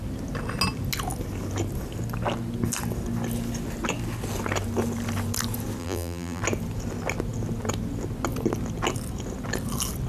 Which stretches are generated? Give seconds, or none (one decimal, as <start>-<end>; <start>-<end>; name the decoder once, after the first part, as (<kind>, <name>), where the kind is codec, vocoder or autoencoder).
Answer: 5.8-6.4 (vocoder, BigVGAN v2)